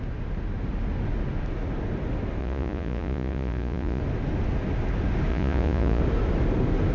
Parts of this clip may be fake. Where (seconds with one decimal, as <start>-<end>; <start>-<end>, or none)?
2.4-4.0; 5.3-6.0